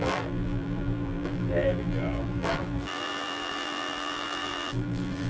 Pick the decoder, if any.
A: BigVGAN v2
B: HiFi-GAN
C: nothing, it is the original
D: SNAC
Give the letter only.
A